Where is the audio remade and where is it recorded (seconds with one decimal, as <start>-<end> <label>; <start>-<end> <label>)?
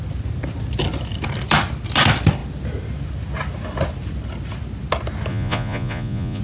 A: 0.0-5.3 recorded; 5.3-6.4 remade